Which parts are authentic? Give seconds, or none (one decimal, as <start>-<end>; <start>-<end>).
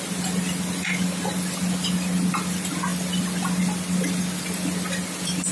0.0-5.5